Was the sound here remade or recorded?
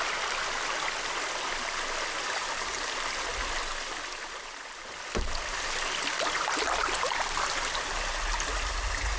recorded